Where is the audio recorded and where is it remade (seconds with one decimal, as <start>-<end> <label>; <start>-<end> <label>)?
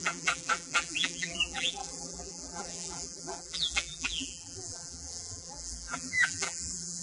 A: 0.0-7.0 remade